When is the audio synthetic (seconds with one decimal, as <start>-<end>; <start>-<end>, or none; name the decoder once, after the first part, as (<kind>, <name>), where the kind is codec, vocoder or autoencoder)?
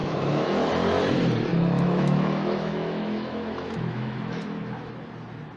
0.0-0.7 (autoencoder, DAC-VAE); 1.5-4.9